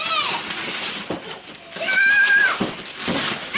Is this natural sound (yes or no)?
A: yes